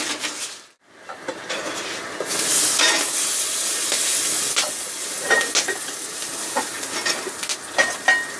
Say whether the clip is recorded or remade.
recorded